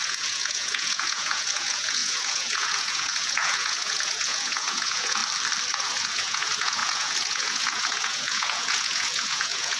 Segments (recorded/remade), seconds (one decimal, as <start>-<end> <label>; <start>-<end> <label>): 0.0-5.2 remade; 5.2-5.7 recorded; 5.7-9.8 remade

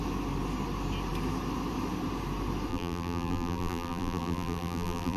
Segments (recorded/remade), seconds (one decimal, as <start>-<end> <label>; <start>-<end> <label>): 0.0-2.7 recorded; 2.7-5.2 remade

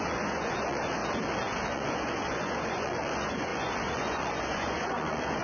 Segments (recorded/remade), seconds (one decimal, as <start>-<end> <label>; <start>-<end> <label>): 0.0-1.0 remade; 1.0-1.7 recorded; 1.7-5.4 remade